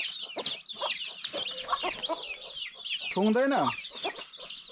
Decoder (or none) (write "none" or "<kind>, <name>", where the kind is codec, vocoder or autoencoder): none